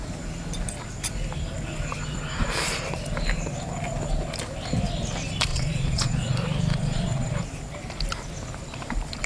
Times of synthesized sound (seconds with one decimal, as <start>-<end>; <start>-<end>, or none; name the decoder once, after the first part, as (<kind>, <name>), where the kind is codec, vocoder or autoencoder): 5.5-6.3 (vocoder, Vocos); 6.7-7.4